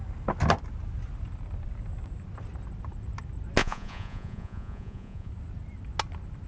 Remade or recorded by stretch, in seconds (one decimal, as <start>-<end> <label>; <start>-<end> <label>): 0.0-3.6 recorded; 3.6-5.3 remade; 5.3-6.5 recorded